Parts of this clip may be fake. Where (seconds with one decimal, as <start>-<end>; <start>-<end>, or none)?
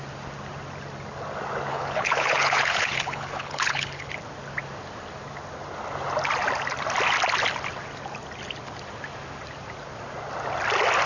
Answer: 1.7-4.1